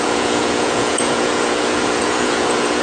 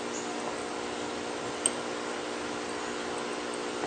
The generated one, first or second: first